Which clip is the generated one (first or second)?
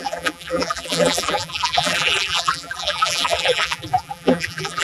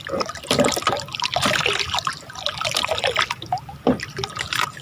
first